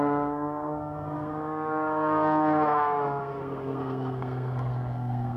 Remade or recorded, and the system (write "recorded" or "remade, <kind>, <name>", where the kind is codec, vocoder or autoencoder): remade, codec, SNAC